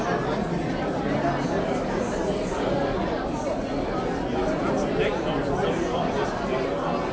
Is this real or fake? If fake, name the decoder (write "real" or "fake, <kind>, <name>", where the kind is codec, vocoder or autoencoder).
real